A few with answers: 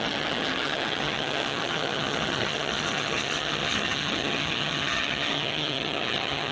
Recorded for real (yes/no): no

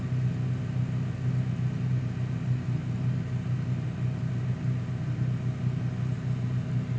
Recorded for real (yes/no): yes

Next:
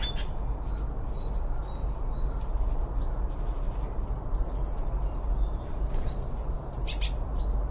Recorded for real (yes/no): yes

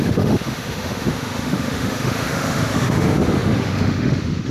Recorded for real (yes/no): no